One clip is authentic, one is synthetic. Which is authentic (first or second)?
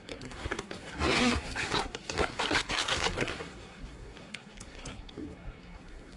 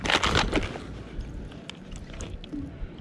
second